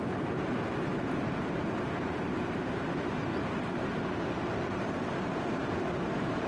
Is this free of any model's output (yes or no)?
no